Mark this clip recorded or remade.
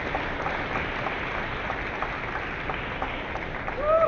recorded